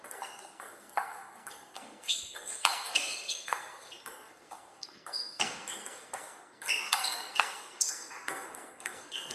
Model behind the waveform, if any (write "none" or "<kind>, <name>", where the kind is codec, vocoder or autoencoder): codec, SNAC